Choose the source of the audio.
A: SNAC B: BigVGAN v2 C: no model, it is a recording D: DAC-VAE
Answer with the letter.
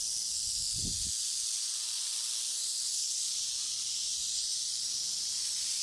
B